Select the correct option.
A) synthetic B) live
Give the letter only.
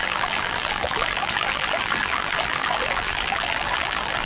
A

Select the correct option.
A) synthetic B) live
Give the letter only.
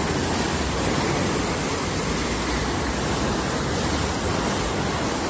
B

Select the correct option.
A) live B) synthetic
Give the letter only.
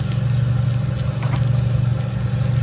A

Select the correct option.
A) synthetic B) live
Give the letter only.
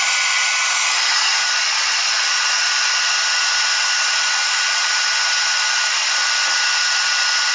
B